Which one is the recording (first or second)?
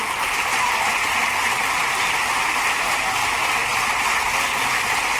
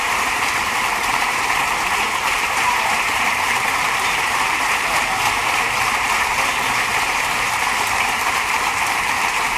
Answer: first